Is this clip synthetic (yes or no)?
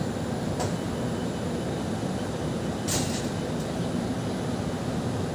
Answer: no